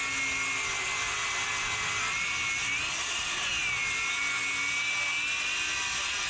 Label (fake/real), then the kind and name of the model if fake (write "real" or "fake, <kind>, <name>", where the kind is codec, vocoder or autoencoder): real